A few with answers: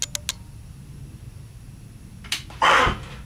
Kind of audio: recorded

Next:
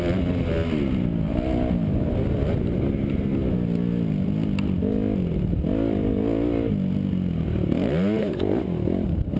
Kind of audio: recorded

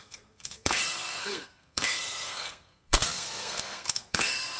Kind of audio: remade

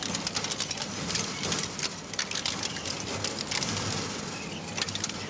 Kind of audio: recorded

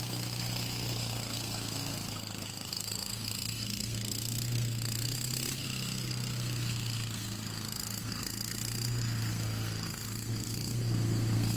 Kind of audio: remade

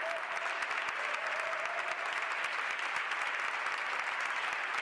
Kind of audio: recorded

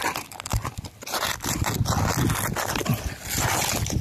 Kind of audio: recorded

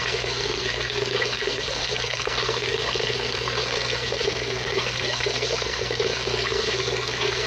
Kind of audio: remade